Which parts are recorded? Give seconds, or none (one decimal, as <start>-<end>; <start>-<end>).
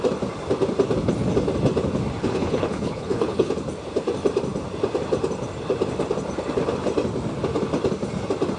0.0-2.2; 3.5-8.6